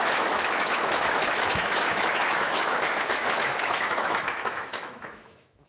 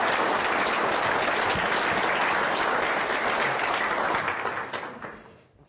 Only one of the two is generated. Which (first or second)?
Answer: first